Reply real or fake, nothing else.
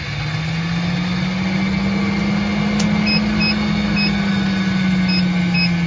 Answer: real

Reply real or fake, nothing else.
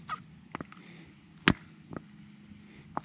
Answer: real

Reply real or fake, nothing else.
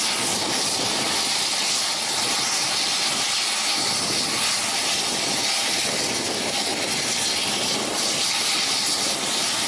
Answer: real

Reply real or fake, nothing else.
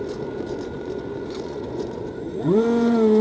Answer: fake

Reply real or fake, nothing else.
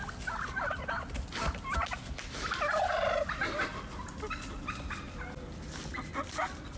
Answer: real